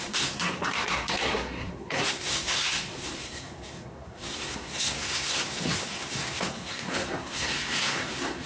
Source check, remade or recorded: remade